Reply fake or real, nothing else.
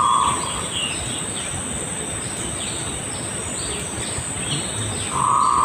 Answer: real